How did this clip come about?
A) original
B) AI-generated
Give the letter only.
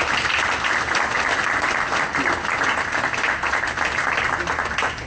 A